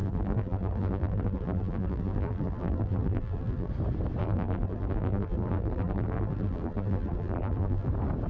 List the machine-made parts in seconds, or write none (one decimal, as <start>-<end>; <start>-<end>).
0.0-3.7; 4.2-7.9